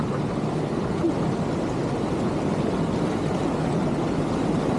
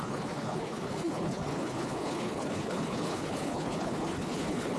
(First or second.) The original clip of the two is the first